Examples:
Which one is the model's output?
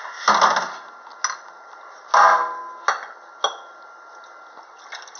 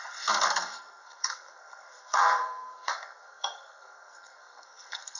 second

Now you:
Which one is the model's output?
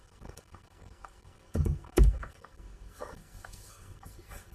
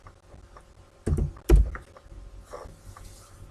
first